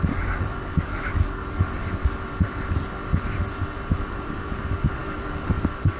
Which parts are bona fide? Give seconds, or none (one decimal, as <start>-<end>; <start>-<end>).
2.0-3.9